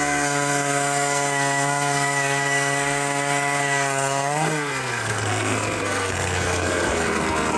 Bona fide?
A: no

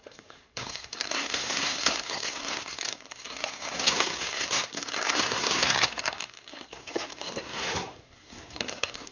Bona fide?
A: no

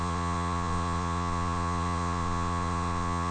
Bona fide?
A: no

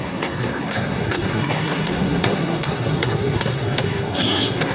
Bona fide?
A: no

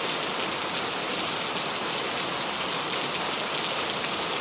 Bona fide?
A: yes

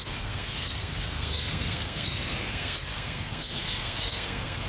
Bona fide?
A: no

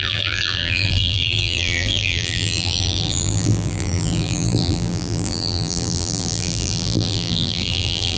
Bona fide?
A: no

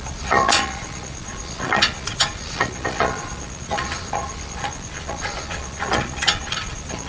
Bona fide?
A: no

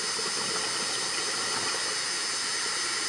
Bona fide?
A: yes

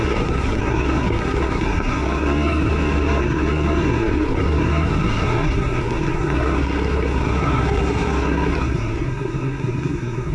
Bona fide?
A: no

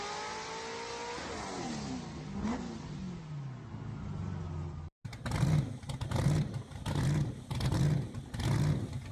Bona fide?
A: yes